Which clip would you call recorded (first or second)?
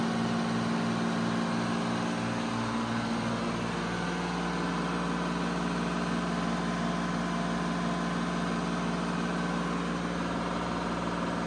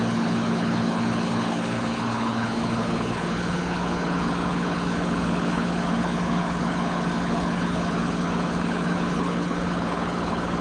first